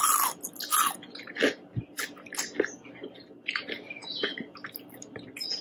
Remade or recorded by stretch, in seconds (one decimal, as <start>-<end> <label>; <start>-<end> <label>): 0.0-5.6 recorded